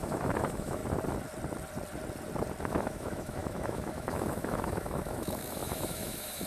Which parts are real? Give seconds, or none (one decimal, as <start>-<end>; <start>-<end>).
0.8-2.6